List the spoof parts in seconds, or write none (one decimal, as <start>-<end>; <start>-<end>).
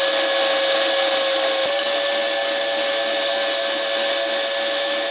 none